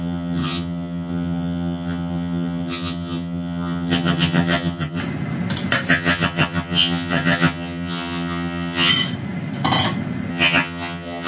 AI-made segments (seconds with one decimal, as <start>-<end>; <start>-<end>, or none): 0.0-5.0; 5.9-8.9; 10.3-11.3